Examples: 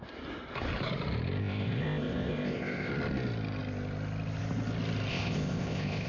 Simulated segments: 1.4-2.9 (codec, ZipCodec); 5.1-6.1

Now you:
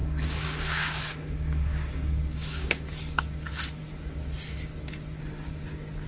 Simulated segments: 0.0-3.2 (codec, DAC)

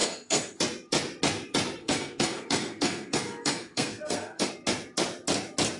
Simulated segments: 0.0-0.6 (codec, SNAC); 1.8-4.5

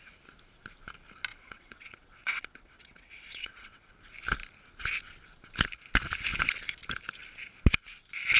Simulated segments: 1.3-3.9 (vocoder, WaveNeXt)

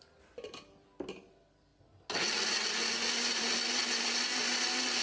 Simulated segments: none

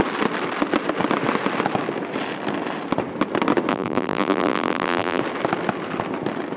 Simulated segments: 3.7-5.2 (vocoder, BigVGAN v2)

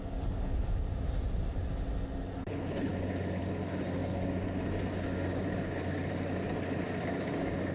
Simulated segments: 2.4-2.9 (codec, HILCodec)

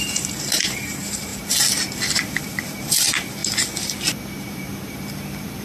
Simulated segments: 0.0-1.3 (vocoder, BigVGAN v2); 2.4-3.4; 4.5-5.6